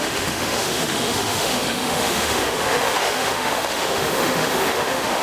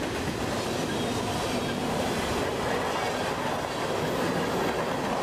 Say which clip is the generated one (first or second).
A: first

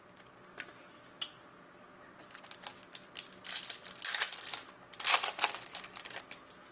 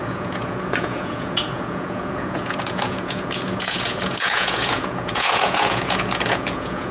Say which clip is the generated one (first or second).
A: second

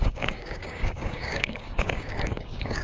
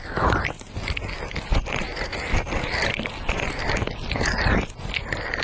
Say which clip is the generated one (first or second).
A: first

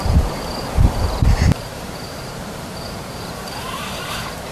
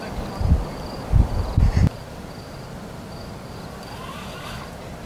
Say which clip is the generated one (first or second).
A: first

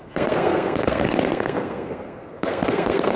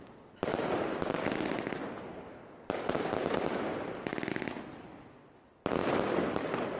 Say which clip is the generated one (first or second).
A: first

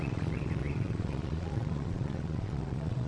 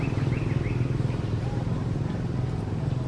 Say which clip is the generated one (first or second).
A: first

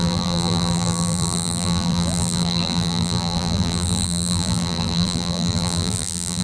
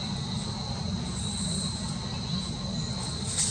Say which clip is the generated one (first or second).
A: first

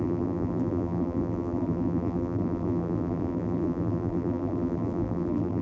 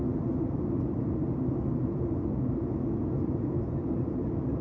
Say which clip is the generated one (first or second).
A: first